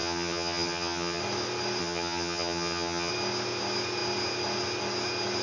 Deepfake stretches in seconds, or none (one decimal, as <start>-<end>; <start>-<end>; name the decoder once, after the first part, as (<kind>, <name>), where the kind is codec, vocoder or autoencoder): 0.0-1.2 (vocoder, HiFi-GAN); 1.8-3.1